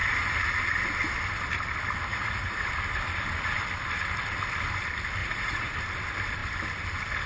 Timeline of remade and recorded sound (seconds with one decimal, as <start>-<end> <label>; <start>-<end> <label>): 0.0-2.1 recorded; 2.1-2.7 remade; 2.7-5.2 recorded; 5.2-5.7 remade; 5.7-7.3 recorded